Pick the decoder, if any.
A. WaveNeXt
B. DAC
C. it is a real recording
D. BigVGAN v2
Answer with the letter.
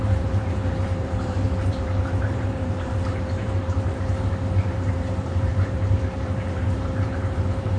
D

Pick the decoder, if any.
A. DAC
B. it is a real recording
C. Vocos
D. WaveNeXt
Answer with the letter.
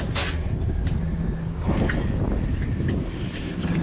B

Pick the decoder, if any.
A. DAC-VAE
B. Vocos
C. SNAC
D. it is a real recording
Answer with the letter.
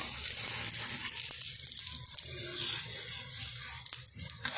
D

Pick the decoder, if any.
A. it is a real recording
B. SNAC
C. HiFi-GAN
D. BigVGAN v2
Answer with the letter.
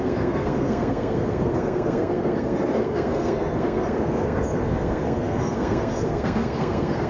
B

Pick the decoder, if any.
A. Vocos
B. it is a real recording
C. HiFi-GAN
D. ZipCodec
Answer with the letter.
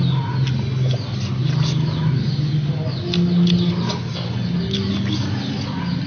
B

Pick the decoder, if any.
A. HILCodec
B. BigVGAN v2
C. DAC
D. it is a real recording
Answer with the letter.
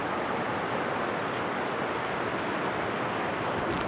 D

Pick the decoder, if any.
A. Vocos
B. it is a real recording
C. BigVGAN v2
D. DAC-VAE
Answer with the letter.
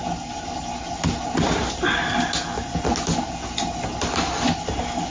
B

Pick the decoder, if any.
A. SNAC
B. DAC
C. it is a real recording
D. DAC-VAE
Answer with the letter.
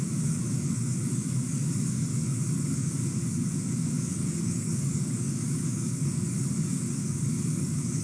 B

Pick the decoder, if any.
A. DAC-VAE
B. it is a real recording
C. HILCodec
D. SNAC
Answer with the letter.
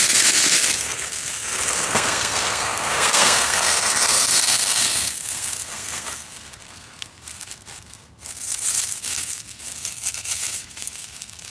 D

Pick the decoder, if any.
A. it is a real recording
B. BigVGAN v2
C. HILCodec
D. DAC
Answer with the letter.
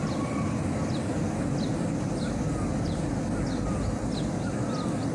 A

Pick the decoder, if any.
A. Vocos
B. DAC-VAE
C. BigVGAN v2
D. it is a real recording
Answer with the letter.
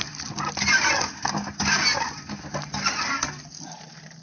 D